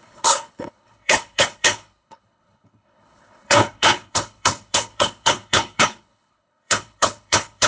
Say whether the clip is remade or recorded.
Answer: remade